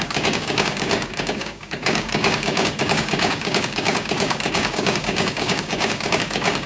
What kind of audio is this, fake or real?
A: fake